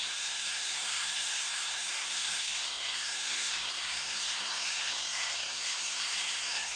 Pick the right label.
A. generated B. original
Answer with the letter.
A